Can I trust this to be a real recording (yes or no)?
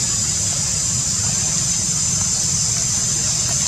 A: yes